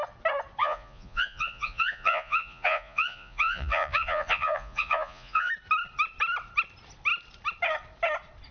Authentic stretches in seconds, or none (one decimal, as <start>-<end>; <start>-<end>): 0.0-0.6; 5.5-8.5